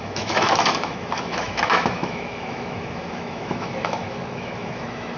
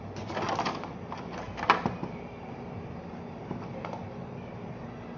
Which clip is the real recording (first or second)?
second